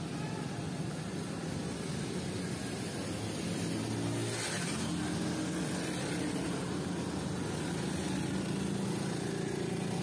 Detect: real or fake real